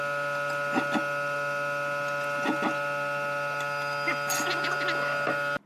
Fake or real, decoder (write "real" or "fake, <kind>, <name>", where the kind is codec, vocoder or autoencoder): real